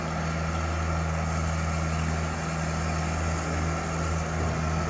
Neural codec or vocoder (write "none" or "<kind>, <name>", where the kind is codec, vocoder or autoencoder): none